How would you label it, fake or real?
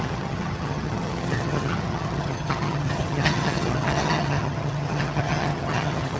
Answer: fake